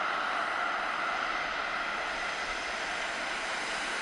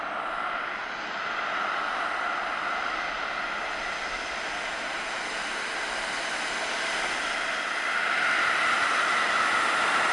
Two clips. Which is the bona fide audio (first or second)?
second